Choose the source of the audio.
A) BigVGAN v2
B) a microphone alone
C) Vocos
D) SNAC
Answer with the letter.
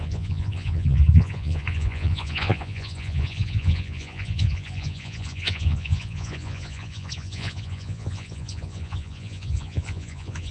C